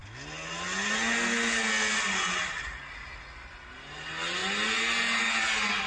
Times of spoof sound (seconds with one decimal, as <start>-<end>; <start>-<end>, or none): none